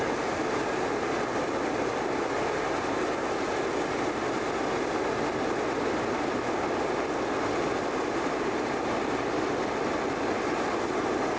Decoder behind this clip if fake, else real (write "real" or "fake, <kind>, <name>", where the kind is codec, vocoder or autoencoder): real